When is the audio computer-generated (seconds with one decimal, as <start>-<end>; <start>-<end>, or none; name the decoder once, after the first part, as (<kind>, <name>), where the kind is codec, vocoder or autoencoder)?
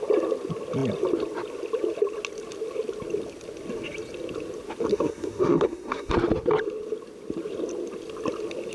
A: 4.9-6.1 (codec, SNAC)